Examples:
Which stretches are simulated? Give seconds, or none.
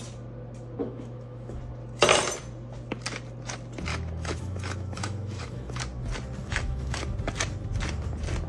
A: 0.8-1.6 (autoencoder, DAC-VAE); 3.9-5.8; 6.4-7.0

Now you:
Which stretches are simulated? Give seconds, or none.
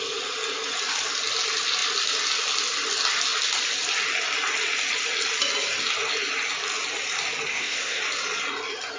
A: 7.5-8.0 (codec, ZipCodec)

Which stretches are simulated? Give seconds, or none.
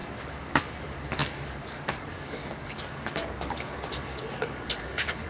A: 0.0-5.3 (codec, DAC)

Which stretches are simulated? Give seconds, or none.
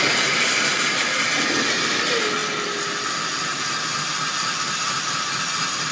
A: none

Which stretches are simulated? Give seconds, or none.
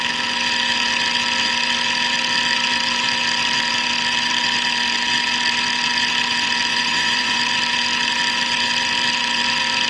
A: 6.7-7.4 (vocoder, Vocos)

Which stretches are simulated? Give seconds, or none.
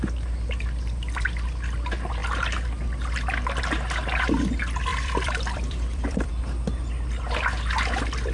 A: 4.9-6.3 (vocoder, BigVGAN v2)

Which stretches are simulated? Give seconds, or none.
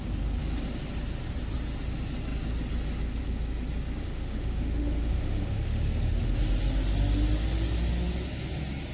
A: 4.0-6.4 (autoencoder, DAC-VAE)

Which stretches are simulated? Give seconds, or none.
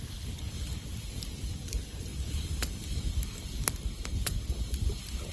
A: none